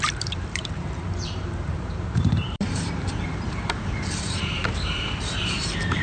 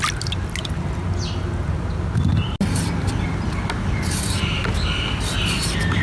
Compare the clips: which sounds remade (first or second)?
first